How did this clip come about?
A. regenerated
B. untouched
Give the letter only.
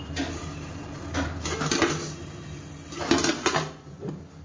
B